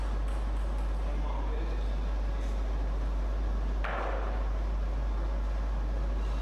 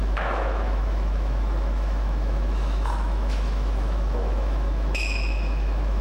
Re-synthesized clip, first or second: second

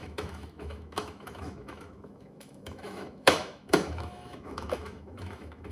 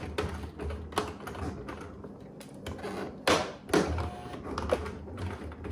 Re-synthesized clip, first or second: first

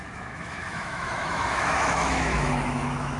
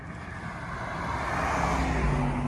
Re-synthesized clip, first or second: first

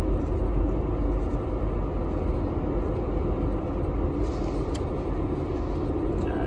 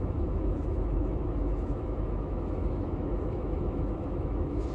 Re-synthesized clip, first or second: second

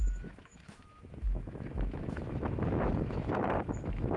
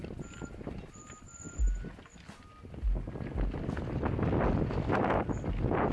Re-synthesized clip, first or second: first